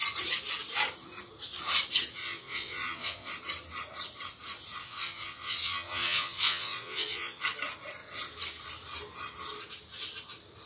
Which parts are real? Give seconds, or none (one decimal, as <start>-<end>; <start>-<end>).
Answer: 0.0-2.2; 3.3-4.8; 7.4-10.7

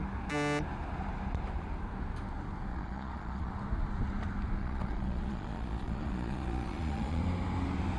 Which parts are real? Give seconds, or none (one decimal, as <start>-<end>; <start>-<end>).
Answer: 0.0-2.7; 3.5-4.6; 7.2-8.0

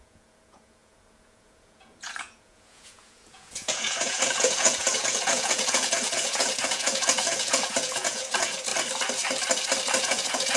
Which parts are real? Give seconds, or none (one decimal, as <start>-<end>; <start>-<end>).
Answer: 8.7-10.0

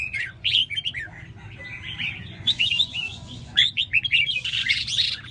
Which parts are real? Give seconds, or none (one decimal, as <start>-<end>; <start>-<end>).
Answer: 0.6-2.2

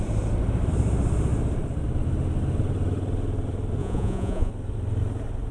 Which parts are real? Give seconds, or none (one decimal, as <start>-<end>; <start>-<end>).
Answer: 0.0-3.8; 4.5-5.5

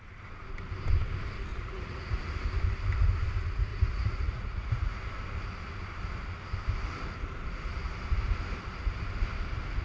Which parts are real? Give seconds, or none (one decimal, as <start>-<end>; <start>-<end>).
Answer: 0.0-1.5; 2.2-3.7; 5.0-9.8